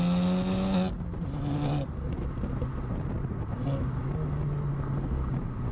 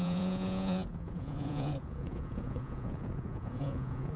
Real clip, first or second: first